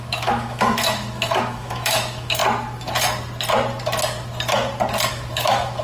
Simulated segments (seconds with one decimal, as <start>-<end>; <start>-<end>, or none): 0.0-2.4; 5.1-5.8